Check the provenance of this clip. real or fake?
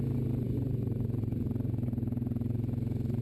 real